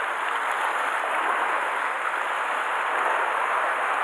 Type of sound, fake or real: real